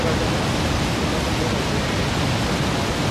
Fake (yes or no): no